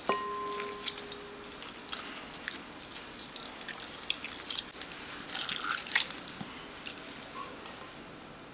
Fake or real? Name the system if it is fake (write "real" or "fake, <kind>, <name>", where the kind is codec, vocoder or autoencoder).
real